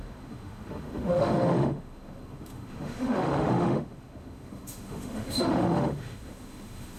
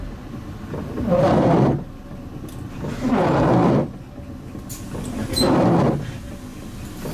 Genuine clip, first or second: second